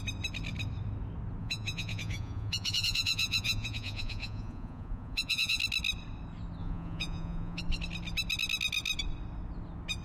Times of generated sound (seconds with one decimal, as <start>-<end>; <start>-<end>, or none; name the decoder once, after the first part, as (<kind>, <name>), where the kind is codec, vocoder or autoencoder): 1.4-5.6 (vocoder, Vocos); 6.6-7.6